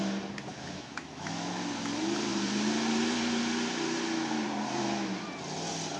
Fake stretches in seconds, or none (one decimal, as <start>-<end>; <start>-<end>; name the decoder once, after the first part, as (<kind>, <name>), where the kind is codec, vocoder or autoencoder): 0.5-1.5 (autoencoder, DAC-VAE)